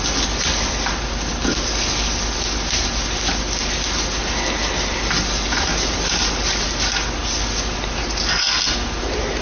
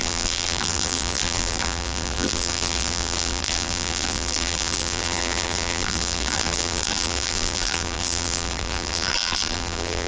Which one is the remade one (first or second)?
second